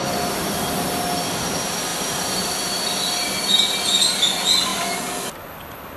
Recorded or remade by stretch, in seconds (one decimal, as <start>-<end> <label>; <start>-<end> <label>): 0.0-1.9 recorded; 1.9-2.4 remade; 2.4-6.0 recorded